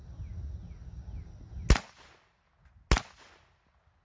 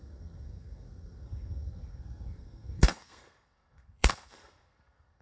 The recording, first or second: first